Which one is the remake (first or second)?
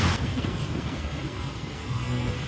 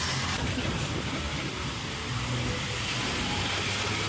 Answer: first